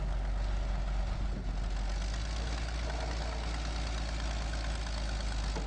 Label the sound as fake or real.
real